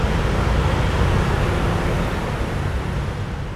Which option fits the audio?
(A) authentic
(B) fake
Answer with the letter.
A